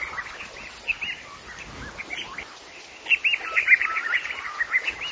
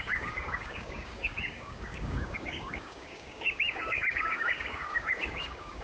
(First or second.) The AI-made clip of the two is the second